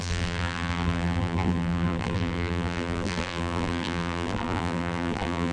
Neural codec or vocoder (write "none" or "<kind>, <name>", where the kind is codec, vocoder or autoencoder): vocoder, BigVGAN v2